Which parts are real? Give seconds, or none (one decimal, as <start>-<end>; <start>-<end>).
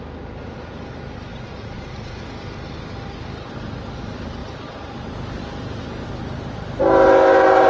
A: 0.0-1.3; 2.2-7.7